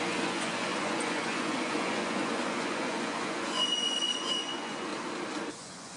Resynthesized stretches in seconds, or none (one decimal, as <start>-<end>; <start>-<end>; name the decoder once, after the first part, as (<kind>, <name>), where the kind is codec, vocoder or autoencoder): 0.0-4.9 (vocoder, Vocos); 5.5-6.0